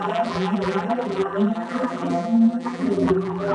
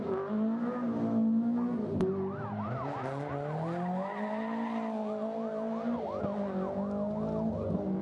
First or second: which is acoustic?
second